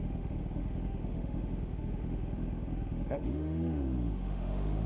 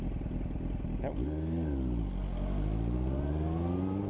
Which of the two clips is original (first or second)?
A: second